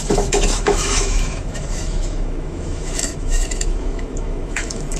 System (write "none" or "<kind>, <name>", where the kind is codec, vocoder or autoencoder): autoencoder, DAC-VAE